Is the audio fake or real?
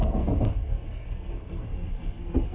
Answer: fake